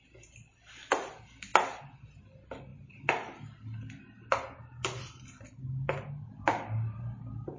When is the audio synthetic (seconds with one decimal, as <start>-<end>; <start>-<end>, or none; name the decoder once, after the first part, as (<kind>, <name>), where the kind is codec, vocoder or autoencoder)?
none